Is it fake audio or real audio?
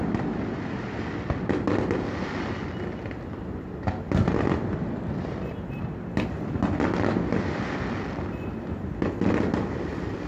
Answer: real